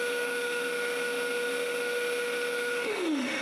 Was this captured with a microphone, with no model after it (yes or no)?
no